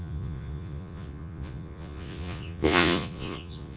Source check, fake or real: fake